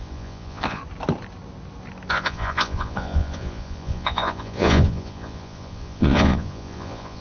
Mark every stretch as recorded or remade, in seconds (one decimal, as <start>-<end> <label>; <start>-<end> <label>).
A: 0.0-0.8 remade; 0.8-2.1 recorded; 2.1-7.2 remade